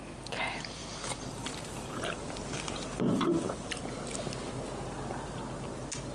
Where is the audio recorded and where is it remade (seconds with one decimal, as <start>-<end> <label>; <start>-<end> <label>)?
0.0-0.8 recorded; 0.8-3.8 remade; 3.8-6.1 recorded